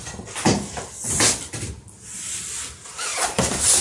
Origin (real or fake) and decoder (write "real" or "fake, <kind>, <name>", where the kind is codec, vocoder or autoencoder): real